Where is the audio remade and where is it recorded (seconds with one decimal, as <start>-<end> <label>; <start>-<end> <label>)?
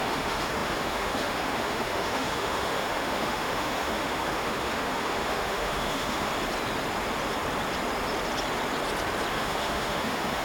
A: 0.0-6.3 remade; 6.3-9.3 recorded; 9.3-10.4 remade